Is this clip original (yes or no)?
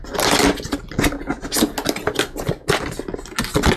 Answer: yes